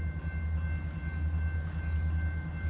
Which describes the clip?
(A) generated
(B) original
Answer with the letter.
B